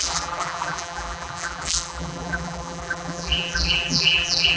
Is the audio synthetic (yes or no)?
yes